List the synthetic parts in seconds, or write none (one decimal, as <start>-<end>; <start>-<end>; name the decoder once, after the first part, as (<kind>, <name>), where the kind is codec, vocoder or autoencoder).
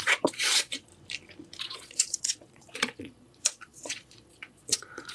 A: 0.0-0.9 (vocoder, Vocos); 1.6-5.1